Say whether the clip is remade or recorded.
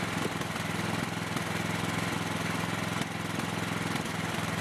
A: recorded